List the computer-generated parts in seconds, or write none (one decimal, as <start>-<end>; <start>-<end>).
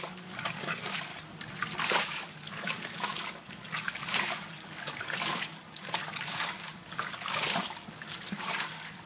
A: 0.0-1.1; 1.8-9.1